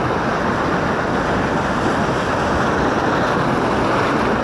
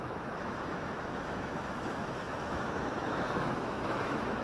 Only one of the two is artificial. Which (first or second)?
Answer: second